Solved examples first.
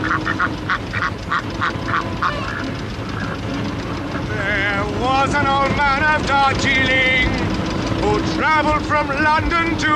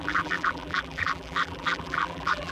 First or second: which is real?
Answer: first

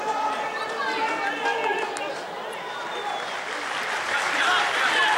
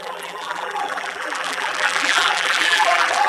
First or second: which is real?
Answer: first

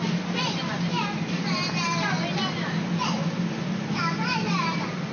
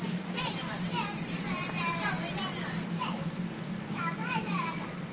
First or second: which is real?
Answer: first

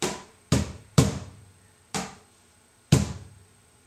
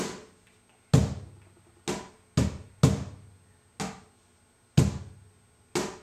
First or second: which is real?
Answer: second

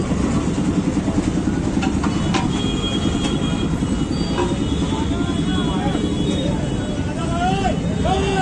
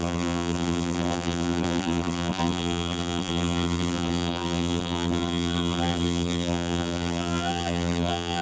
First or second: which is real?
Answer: first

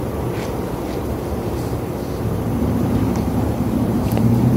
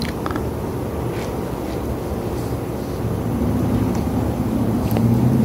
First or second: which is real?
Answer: second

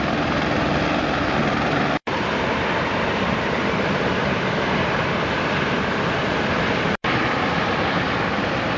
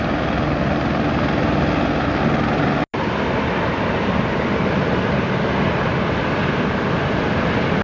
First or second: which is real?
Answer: second